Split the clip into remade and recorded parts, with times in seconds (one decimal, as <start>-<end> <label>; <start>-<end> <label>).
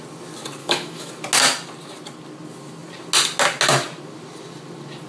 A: 0.0-0.6 recorded; 0.6-1.1 remade; 1.1-5.1 recorded